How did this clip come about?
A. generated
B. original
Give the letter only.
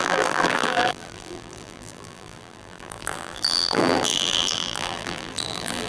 A